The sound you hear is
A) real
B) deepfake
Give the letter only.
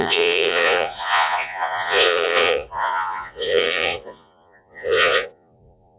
B